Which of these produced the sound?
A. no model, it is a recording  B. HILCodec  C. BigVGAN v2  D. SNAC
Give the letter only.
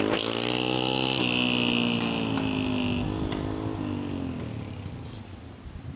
A